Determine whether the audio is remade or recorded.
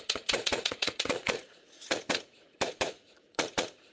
remade